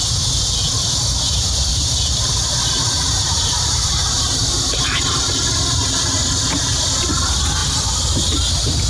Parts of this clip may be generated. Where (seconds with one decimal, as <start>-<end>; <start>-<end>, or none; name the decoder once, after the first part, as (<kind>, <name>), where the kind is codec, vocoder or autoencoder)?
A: 1.7-5.2 (vocoder, BigVGAN v2)